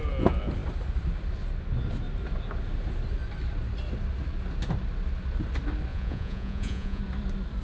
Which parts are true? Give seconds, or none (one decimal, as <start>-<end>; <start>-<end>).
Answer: 0.0-5.9; 7.0-7.6